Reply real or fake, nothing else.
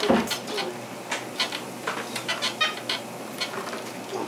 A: real